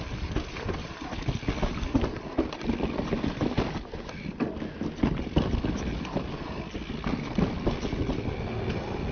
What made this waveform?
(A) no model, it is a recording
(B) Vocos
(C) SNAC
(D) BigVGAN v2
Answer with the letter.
A